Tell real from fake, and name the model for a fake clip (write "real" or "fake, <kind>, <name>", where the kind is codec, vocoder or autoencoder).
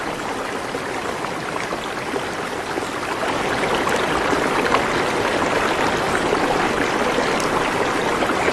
real